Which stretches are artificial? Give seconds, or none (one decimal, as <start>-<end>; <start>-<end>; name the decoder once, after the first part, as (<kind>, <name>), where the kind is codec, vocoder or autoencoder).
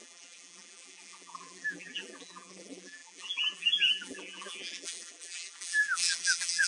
0.0-6.7 (vocoder, BigVGAN v2)